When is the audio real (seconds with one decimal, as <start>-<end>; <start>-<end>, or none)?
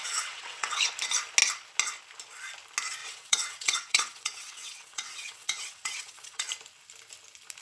0.8-3.0; 6.5-7.6